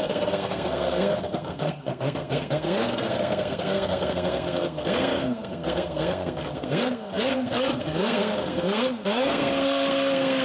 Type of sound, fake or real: fake